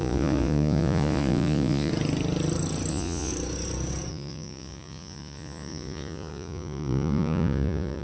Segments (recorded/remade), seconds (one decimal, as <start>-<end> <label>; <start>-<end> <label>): 0.0-1.9 remade; 1.9-2.9 recorded; 2.9-3.3 remade; 3.3-4.1 recorded; 4.1-8.0 remade